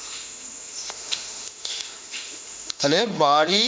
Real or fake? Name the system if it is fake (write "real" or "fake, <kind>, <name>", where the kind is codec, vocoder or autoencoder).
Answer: fake, autoencoder, DAC-VAE